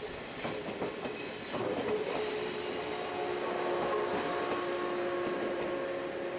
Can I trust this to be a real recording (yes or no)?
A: yes